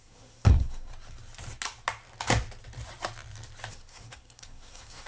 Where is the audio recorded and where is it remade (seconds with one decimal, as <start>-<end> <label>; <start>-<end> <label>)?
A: 0.0-0.9 remade; 0.9-3.7 recorded; 3.7-5.1 remade